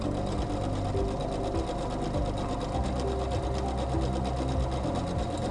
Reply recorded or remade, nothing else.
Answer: recorded